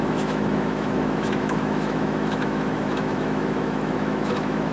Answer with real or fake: fake